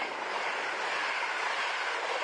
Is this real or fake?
real